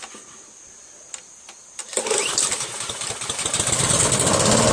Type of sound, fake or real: real